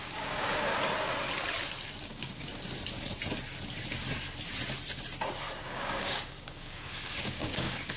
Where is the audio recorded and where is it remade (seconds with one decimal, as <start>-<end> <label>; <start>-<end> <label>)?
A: 0.0-0.7 remade; 0.7-2.1 recorded; 2.1-2.5 remade; 2.5-5.6 recorded; 5.6-8.0 remade